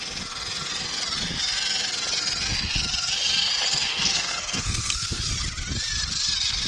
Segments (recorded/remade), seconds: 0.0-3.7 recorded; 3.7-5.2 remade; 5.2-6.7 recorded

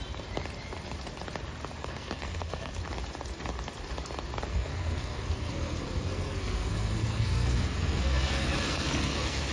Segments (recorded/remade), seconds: 0.0-1.8 recorded; 1.8-2.8 remade; 2.8-4.5 recorded; 4.5-9.5 remade

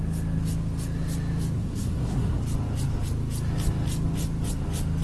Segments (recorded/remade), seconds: 0.0-1.6 recorded; 1.6-2.4 remade; 2.4-5.0 recorded

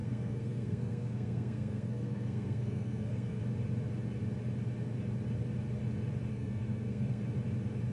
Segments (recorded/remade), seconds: 0.0-3.4 remade; 3.4-6.3 recorded; 6.3-7.2 remade; 7.2-7.9 recorded

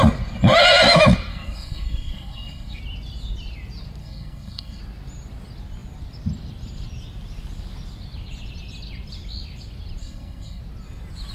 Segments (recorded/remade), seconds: 0.0-1.3 recorded; 1.3-2.8 remade; 2.8-4.0 recorded; 4.0-4.8 remade; 4.8-10.0 recorded; 10.0-10.6 remade; 10.6-11.3 recorded